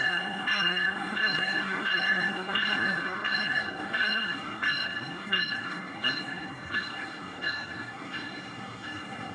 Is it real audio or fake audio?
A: fake